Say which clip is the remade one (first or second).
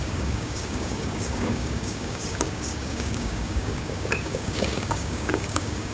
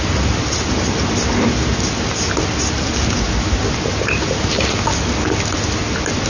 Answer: first